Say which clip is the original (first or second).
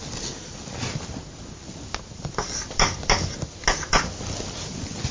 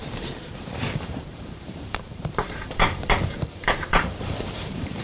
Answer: first